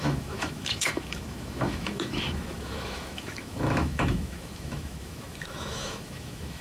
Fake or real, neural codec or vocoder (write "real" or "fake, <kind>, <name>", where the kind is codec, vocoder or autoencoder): fake, autoencoder, DAC-VAE